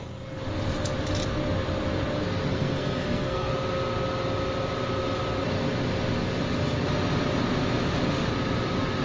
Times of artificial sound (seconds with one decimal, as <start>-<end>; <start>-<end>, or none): 2.5-3.5